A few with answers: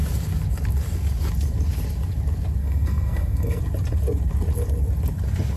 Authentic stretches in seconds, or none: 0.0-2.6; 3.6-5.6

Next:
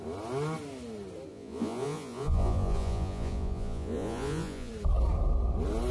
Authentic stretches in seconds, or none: 0.0-1.3; 4.7-5.9